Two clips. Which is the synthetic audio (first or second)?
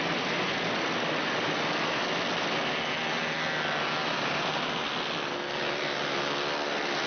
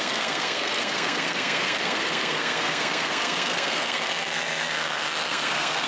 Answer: second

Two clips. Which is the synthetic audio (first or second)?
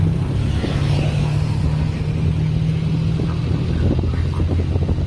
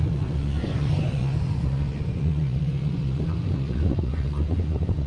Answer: second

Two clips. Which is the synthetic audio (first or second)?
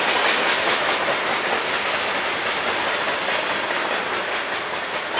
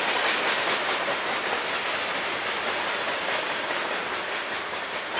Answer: second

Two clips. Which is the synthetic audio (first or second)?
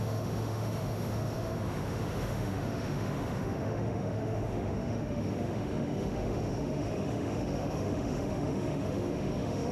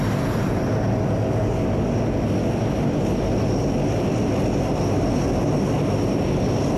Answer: first